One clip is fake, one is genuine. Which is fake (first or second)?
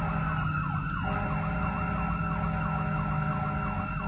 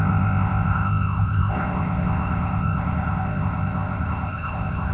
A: second